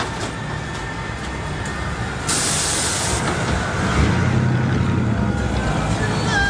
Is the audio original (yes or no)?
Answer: yes